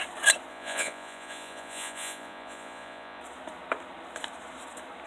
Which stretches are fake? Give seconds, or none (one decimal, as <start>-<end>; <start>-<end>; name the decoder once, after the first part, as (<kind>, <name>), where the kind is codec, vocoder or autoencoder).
0.5-3.2 (vocoder, Vocos)